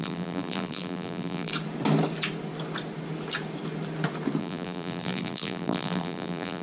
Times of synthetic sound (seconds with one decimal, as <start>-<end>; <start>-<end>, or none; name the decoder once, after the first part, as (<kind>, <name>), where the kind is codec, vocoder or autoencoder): 0.0-1.5 (vocoder, BigVGAN v2); 4.4-6.6